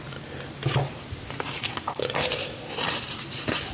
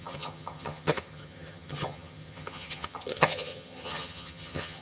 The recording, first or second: first